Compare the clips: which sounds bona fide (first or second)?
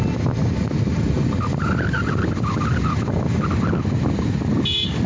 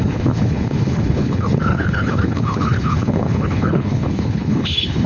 first